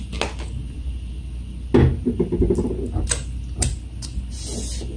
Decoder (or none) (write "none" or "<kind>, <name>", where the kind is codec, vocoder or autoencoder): none